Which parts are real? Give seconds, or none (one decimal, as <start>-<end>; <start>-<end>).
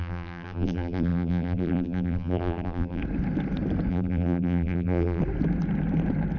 3.0-3.9; 5.2-6.4